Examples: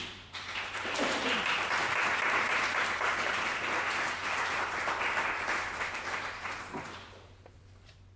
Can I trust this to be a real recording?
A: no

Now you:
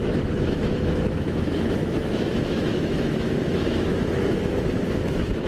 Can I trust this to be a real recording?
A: no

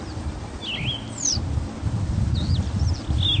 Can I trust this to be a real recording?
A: yes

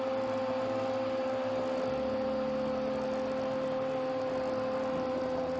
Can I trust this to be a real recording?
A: yes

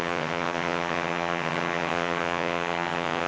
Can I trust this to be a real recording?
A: no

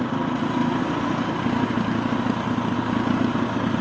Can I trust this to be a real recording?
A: yes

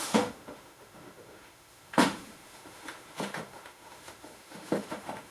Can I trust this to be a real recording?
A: no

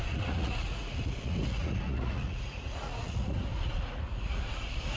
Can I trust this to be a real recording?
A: no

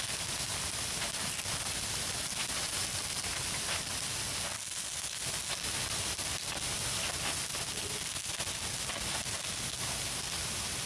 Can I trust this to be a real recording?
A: yes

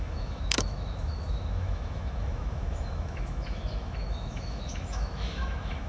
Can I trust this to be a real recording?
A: no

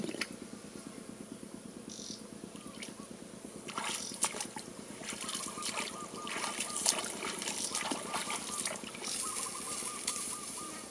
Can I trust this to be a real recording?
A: yes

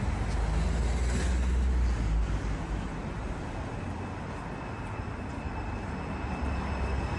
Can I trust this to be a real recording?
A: yes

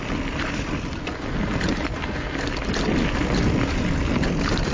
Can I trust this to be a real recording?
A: yes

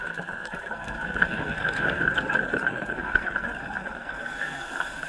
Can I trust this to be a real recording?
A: no